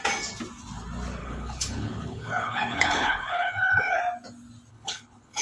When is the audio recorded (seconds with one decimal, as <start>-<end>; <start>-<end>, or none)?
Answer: 0.0-1.2; 4.0-4.7